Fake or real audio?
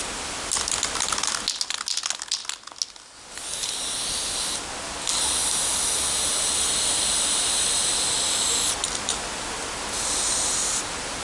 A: real